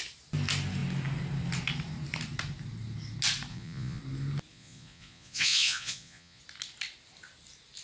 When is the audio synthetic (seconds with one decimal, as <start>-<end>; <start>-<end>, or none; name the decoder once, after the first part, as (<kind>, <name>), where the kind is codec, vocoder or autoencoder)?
3.5-4.0 (vocoder, Vocos); 4.5-6.4

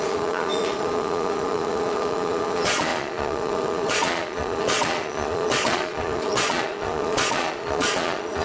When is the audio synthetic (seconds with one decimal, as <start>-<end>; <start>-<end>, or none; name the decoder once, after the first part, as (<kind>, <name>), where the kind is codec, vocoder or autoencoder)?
0.0-8.4 (vocoder, Vocos)

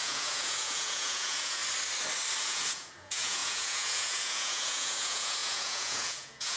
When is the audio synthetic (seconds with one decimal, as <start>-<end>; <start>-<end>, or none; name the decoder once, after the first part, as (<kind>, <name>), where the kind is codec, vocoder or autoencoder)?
0.0-1.6 (vocoder, Vocos); 2.4-6.6

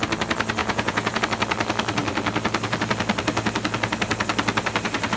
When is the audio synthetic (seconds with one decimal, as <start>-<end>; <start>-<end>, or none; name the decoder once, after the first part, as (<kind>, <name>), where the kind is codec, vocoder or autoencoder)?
0.6-1.2 (vocoder, Vocos)

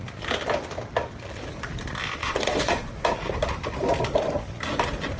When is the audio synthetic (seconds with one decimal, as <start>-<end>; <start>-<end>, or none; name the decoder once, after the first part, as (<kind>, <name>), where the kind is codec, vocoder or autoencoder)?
2.2-2.9 (vocoder, Vocos)

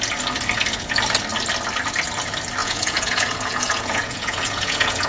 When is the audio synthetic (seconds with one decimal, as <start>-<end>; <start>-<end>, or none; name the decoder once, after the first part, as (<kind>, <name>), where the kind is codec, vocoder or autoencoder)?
2.6-5.1 (vocoder, Vocos)